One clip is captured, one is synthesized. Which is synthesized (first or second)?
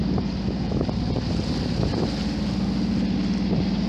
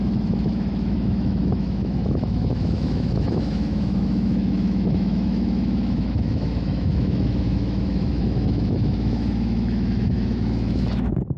second